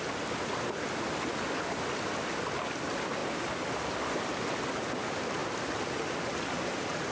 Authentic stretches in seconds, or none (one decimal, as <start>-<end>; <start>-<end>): 0.0-7.1